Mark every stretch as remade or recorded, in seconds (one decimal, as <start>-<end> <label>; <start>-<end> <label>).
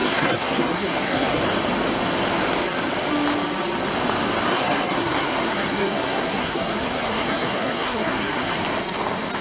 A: 0.0-1.4 remade; 1.4-4.5 recorded; 4.5-8.5 remade; 8.5-9.4 recorded